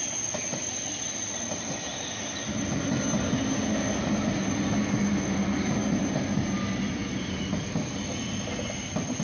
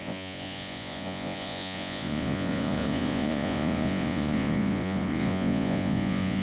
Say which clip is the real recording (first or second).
first